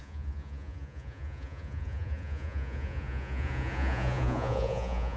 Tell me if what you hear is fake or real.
fake